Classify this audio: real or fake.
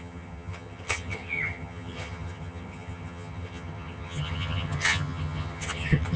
fake